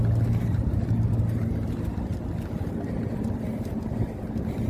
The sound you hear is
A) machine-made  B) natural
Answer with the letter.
B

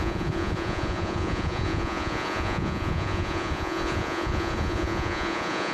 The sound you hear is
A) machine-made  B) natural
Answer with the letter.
A